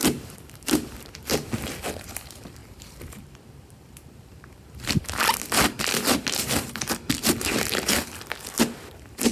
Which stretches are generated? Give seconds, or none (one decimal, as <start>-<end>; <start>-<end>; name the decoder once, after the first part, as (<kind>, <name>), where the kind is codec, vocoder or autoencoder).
0.0-1.3 (vocoder, BigVGAN v2); 2.6-5.1